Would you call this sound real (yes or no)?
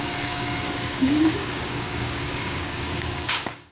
no